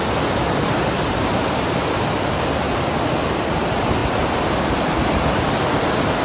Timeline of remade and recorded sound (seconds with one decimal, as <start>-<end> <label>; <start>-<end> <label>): 0.0-6.2 recorded